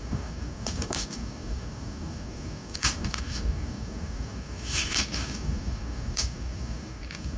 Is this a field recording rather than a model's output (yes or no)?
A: no